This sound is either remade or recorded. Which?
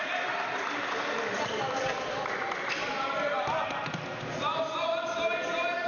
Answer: recorded